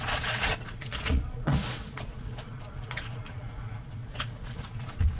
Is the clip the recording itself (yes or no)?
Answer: no